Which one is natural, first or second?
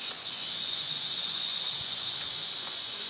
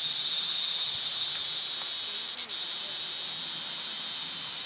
second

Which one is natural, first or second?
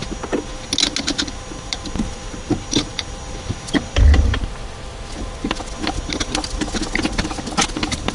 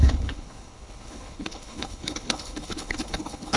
first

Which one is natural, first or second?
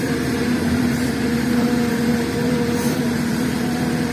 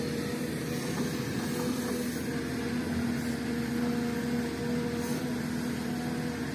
second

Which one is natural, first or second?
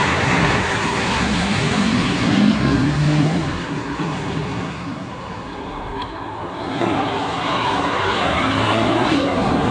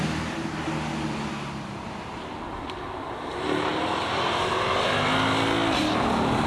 second